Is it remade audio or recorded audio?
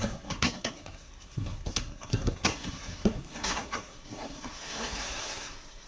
remade